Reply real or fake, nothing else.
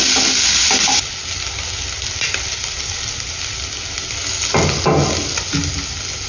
real